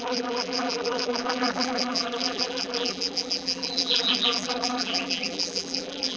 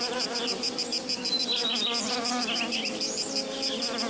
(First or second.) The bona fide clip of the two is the second